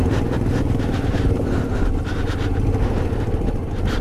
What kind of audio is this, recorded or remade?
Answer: recorded